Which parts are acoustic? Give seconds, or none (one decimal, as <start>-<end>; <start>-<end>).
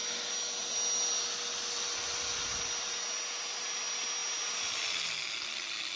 0.0-6.0